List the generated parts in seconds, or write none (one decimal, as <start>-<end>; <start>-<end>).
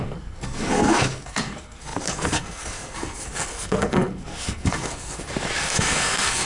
0.0-6.5